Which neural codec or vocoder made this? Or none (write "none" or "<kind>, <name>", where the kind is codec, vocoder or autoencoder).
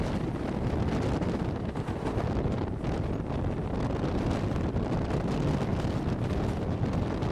none